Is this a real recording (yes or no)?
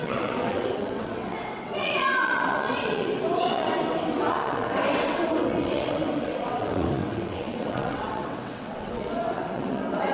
no